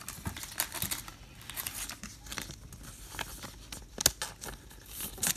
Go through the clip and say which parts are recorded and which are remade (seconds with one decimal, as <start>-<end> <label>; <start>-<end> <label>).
0.0-5.4 recorded